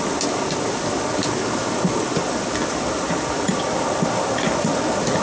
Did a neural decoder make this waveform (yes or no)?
no